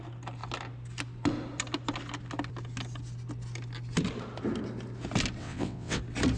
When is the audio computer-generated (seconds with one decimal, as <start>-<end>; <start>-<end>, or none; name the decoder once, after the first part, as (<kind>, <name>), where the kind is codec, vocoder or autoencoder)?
5.4-6.0 (vocoder, WaveNeXt)